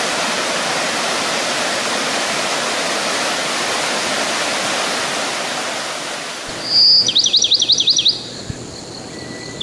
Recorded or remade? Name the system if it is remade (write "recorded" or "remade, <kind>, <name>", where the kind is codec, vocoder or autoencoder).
recorded